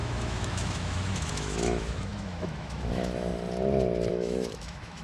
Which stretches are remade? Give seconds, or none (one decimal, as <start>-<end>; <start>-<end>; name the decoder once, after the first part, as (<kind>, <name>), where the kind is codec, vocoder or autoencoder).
0.0-3.3 (autoencoder, DAC-VAE); 4.1-5.0